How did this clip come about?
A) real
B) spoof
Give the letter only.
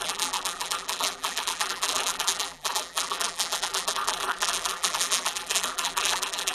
B